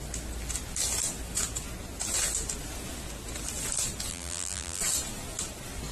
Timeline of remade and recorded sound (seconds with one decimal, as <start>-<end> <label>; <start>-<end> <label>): 0.0-4.1 recorded; 4.1-4.8 remade; 4.8-5.9 recorded